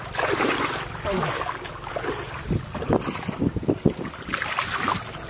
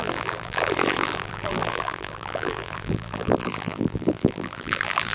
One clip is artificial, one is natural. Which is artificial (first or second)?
second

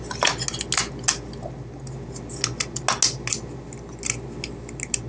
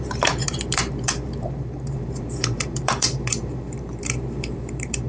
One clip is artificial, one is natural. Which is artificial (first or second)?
second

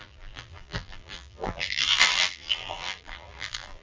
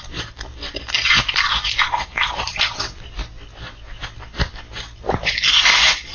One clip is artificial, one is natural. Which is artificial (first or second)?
first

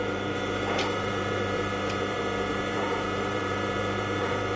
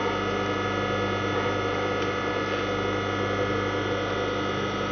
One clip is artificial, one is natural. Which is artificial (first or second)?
first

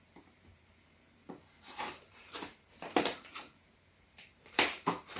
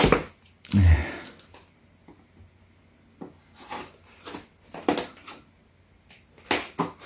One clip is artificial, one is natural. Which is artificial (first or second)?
first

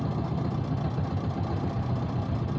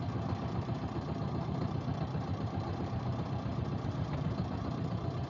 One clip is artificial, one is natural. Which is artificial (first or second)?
second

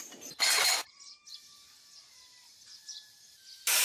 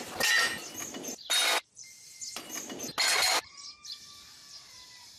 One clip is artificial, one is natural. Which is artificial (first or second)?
first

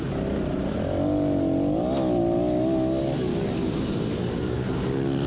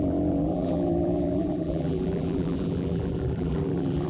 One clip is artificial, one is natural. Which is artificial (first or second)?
second